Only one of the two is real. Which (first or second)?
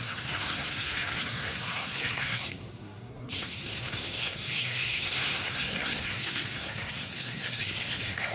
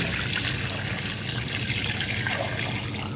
second